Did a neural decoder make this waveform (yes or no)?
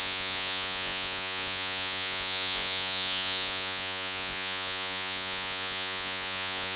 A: yes